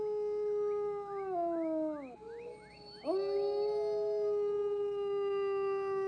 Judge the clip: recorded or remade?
recorded